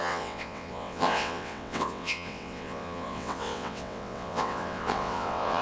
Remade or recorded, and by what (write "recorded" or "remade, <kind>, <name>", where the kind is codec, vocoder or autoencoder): remade, vocoder, WaveNeXt